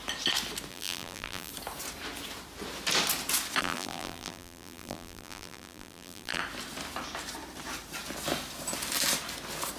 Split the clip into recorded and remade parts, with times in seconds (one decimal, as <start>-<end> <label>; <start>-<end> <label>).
0.0-0.7 recorded; 0.7-1.5 remade; 1.5-3.6 recorded; 3.6-6.4 remade; 6.4-9.8 recorded